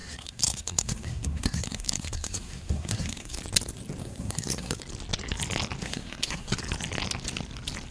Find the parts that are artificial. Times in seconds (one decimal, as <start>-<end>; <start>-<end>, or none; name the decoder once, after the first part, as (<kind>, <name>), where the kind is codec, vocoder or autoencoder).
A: 0.0-3.4 (codec, SNAC); 4.0-4.8; 5.8-6.6